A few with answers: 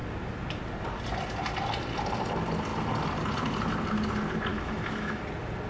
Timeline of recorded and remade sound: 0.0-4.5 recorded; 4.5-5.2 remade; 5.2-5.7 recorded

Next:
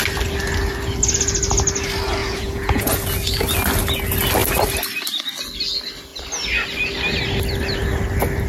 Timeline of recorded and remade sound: 0.0-2.2 recorded; 2.2-2.9 remade; 2.9-8.5 recorded

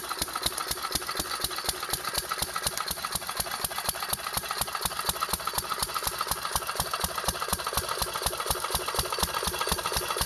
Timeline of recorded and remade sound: 0.0-10.3 recorded

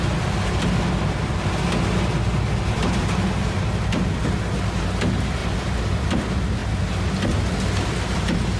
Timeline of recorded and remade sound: 0.0-8.6 recorded

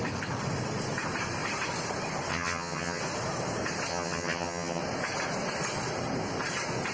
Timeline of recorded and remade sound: 0.0-2.3 recorded; 2.3-3.0 remade; 3.0-3.9 recorded; 3.9-4.8 remade; 4.8-6.9 recorded